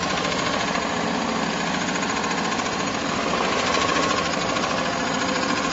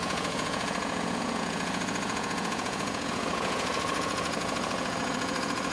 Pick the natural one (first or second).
first